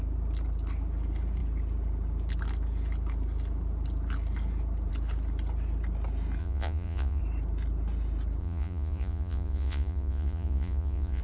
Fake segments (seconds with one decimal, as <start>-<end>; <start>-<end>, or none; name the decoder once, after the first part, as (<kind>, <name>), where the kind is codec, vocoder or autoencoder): 6.4-7.2 (vocoder, Vocos); 8.4-11.2

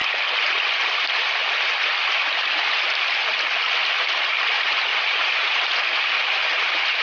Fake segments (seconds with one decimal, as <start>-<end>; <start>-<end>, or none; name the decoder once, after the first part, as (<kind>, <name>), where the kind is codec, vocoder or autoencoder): 4.9-5.5 (vocoder, Vocos)

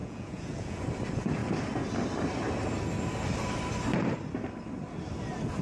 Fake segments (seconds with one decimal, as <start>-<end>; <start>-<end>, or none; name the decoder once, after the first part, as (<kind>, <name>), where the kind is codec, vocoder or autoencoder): 0.0-0.8 (vocoder, Vocos)

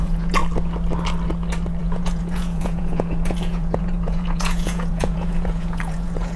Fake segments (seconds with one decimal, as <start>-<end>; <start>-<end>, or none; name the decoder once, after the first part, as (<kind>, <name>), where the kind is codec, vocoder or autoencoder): 0.0-0.4 (vocoder, Vocos); 1.8-6.4

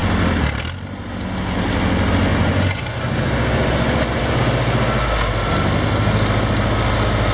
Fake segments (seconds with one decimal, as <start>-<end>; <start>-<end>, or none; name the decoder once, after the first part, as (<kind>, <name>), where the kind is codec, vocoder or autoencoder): 2.3-4.4 (vocoder, Vocos)

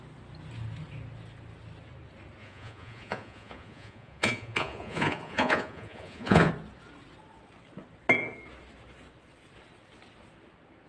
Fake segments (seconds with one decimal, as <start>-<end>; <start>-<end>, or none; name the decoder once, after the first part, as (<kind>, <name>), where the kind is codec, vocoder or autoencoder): 2.4-6.5 (vocoder, Vocos)

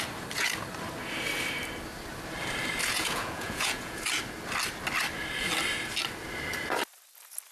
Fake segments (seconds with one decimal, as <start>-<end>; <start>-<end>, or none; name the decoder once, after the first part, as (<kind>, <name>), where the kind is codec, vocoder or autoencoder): 2.8-4.0 (vocoder, Vocos)